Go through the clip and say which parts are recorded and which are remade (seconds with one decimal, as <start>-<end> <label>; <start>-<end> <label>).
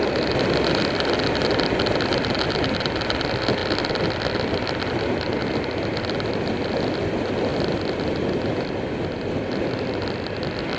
0.0-10.8 recorded